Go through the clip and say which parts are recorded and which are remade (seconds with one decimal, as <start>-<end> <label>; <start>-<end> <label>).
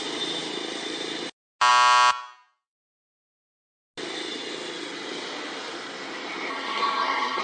0.0-6.5 recorded; 6.5-7.4 remade